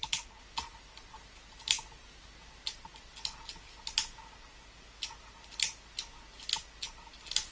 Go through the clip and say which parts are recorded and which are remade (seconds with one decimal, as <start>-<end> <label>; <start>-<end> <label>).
0.0-7.5 recorded